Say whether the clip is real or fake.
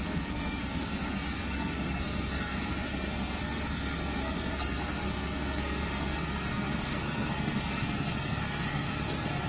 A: fake